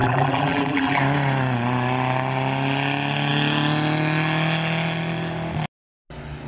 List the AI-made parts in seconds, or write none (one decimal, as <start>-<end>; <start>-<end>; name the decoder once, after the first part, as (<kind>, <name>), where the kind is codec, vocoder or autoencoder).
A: 0.0-1.0 (vocoder, BigVGAN v2)